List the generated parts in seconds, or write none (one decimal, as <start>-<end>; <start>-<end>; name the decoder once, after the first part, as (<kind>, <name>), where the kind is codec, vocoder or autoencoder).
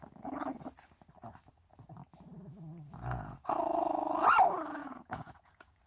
4.8-5.9 (vocoder, Vocos)